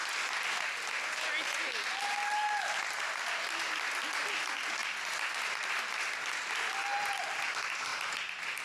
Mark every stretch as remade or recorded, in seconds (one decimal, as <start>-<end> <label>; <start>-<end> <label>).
0.0-8.6 recorded